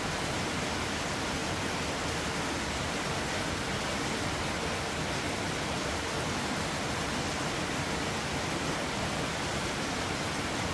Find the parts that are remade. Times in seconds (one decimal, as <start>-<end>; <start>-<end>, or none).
none